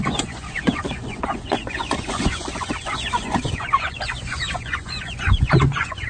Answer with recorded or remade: remade